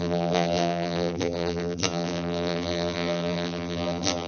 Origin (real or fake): fake